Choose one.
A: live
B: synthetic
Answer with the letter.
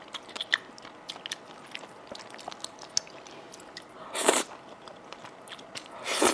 A